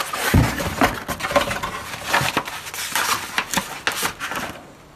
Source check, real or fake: real